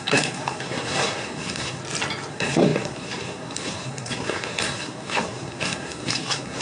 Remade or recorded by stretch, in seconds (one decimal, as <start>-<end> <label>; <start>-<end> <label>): 0.0-1.8 remade; 1.8-2.3 recorded; 2.3-6.6 remade